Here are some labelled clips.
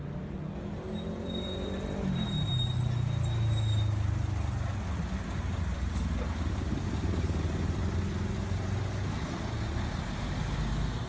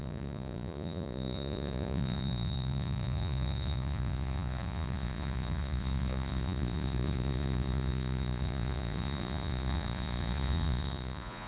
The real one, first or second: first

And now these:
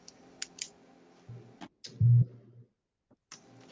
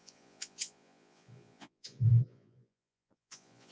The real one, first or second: first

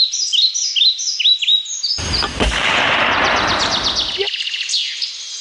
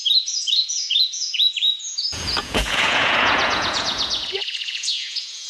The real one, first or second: first